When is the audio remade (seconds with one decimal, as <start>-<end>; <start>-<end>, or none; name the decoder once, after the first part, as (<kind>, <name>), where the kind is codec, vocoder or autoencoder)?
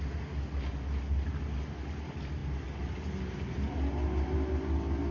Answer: none